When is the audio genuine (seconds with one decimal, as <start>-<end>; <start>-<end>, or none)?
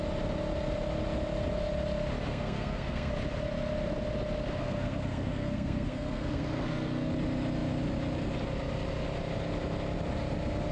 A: 0.0-2.3; 3.1-4.6; 7.1-10.7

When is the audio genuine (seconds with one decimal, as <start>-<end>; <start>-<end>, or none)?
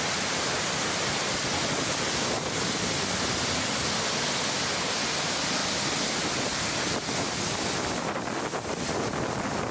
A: 0.0-9.7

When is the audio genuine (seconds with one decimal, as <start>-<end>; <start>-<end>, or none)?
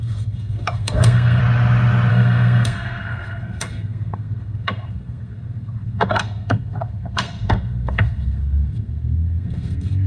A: 1.4-2.1